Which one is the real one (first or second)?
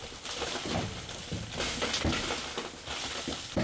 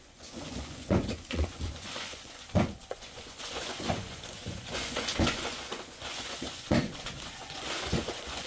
first